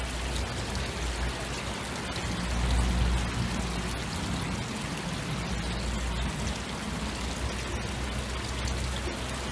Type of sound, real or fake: real